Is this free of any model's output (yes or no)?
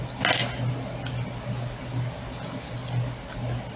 yes